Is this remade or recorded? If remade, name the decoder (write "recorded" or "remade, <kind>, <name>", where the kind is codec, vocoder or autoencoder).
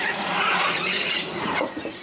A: remade, vocoder, Vocos